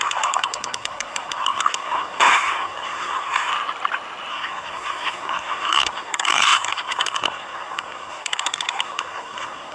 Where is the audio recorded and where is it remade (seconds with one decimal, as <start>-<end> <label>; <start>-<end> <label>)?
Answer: 0.0-3.5 remade; 3.5-4.3 recorded; 4.3-9.7 remade